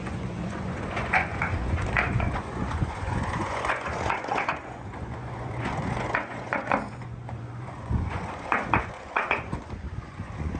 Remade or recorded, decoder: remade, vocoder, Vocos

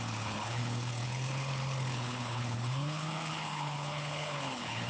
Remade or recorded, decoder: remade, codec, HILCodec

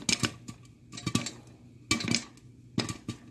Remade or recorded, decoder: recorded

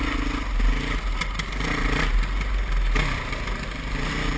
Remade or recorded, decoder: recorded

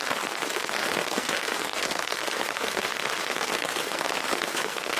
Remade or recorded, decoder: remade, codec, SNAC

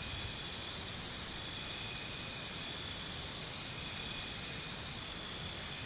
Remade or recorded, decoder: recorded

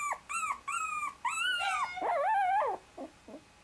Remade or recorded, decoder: recorded